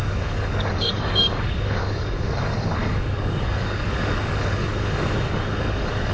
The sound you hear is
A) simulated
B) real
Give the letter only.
A